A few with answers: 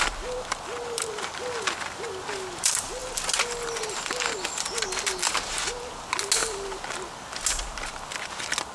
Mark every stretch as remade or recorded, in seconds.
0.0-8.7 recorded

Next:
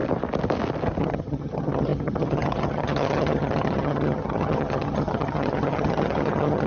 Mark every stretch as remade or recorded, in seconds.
0.0-1.0 recorded; 1.0-6.7 remade

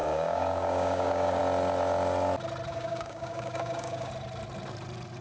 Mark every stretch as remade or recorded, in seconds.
0.0-1.4 remade; 1.4-2.7 recorded; 2.7-4.1 remade; 4.1-5.2 recorded